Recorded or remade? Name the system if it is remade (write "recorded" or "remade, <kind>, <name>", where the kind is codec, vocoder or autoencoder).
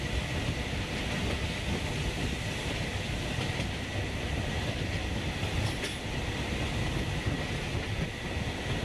recorded